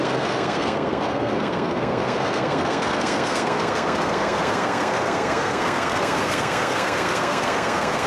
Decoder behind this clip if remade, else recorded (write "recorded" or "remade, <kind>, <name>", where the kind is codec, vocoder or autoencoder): remade, codec, SNAC